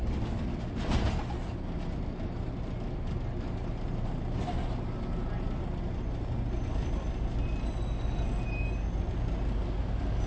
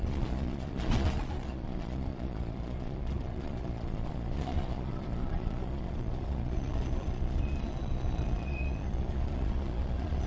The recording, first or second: first